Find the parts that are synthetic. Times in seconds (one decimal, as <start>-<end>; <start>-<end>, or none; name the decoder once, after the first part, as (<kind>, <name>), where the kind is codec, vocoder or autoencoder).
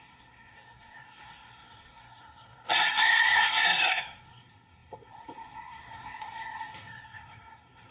0.0-7.9 (codec, SNAC)